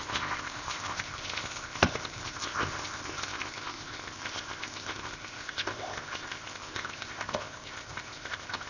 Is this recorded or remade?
remade